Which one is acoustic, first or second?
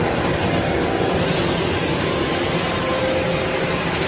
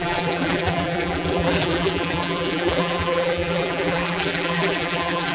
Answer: first